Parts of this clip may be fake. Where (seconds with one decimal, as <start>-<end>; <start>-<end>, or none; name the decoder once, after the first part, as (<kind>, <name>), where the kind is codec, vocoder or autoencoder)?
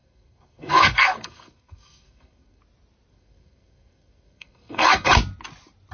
0.0-2.6 (codec, SNAC); 3.1-5.1